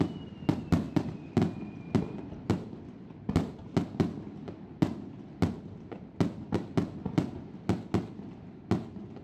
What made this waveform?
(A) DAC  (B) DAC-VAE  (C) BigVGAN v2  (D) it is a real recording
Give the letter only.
D